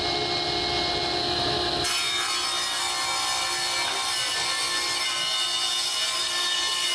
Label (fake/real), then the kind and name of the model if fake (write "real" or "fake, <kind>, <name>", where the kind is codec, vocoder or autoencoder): real